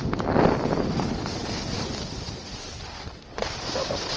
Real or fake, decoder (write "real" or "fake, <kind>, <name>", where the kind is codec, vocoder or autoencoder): real